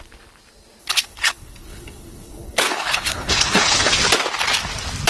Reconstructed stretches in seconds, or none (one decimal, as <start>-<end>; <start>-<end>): 0.8-3.9